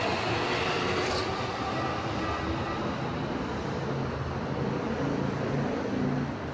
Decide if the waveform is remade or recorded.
recorded